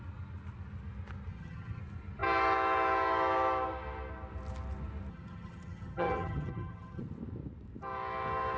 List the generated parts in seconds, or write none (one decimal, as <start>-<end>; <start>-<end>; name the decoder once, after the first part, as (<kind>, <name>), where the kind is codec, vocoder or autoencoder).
1.3-1.8 (vocoder, HiFi-GAN); 5.1-7.0